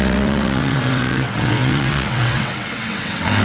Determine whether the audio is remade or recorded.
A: remade